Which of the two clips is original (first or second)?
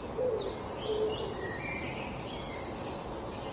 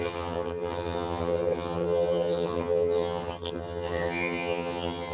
first